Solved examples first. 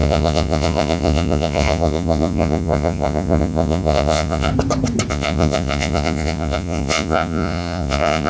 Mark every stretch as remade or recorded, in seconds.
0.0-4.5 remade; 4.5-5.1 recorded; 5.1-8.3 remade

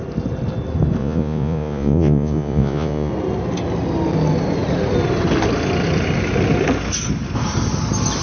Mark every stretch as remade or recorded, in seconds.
0.0-1.0 recorded; 1.0-3.1 remade; 3.1-8.2 recorded

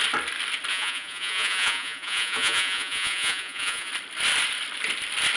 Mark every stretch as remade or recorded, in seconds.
0.0-0.7 recorded; 0.7-3.9 remade; 3.9-5.4 recorded

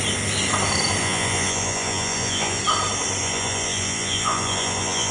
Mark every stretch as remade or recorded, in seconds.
0.0-1.0 recorded; 1.0-2.6 remade; 2.6-3.2 recorded; 3.2-5.1 remade